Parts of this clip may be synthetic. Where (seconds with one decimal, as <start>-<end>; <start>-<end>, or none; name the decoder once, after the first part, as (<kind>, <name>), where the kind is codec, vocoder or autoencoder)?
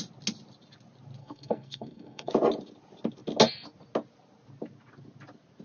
1.2-2.3 (codec, SNAC)